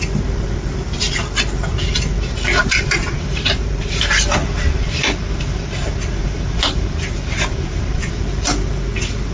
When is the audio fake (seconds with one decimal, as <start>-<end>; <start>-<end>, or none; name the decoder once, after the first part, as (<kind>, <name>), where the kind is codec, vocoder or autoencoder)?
2.6-4.2 (vocoder, BigVGAN v2); 6.2-8.1